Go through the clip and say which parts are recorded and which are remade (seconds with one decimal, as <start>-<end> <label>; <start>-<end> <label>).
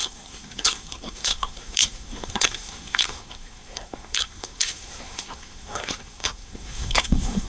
0.0-7.5 remade